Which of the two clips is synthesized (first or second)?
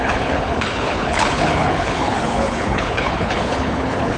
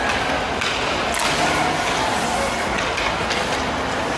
first